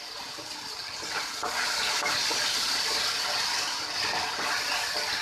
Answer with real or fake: fake